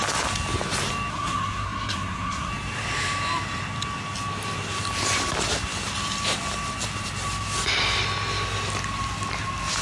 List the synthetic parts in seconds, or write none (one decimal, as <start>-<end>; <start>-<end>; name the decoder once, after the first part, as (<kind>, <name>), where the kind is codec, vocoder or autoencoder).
1.1-2.5 (codec, SNAC)